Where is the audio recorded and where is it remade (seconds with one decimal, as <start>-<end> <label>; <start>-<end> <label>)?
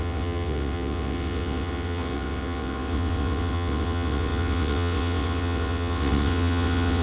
0.0-7.0 remade